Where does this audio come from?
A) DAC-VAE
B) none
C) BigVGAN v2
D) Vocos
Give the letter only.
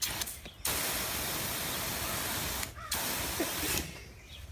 B